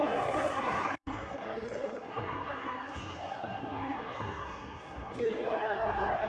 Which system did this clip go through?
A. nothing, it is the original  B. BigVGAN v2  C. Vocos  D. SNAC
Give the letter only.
D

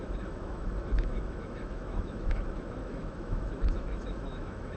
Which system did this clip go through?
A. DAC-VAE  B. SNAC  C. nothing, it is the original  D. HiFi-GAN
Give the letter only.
A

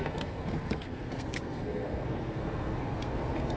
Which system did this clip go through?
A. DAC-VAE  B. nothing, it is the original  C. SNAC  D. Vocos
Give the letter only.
C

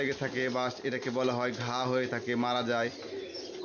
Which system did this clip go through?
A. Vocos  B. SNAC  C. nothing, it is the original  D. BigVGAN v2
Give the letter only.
C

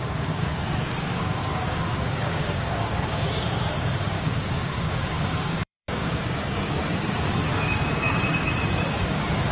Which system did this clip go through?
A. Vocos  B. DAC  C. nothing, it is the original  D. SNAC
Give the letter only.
B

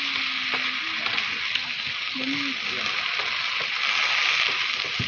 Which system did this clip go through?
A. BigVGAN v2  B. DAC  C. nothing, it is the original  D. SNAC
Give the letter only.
C